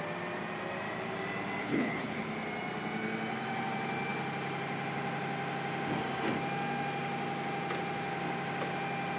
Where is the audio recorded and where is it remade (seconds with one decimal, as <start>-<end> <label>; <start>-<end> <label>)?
0.0-1.6 recorded; 1.6-2.3 remade; 2.3-9.2 recorded